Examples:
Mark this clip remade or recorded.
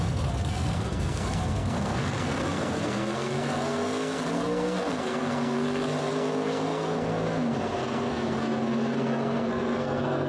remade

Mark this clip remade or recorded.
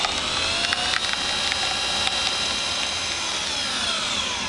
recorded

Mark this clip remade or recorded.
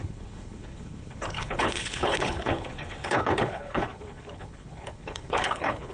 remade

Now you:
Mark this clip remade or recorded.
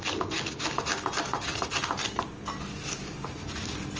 recorded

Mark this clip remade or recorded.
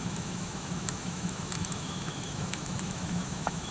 remade